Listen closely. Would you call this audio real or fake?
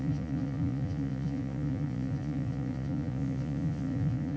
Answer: fake